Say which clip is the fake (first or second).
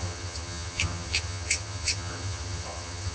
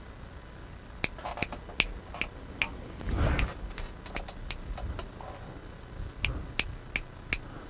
first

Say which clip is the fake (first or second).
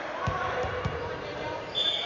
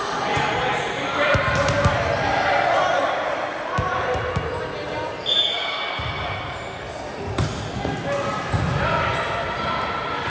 first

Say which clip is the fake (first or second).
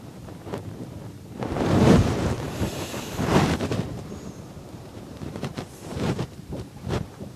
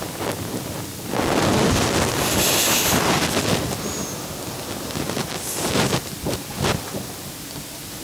first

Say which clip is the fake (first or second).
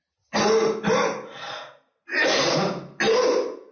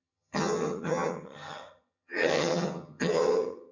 second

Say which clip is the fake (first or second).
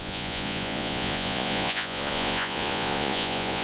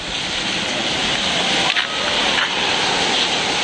first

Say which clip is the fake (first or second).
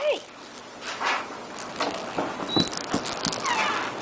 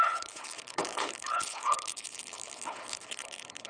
second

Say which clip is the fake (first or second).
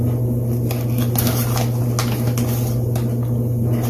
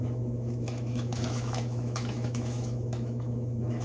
second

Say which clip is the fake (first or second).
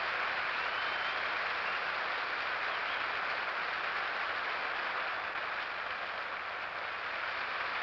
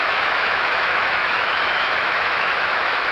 second